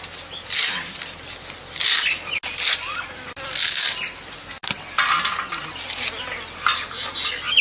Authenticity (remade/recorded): recorded